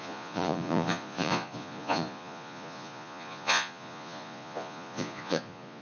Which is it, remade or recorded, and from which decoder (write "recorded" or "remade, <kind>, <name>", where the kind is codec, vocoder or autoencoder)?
remade, vocoder, Vocos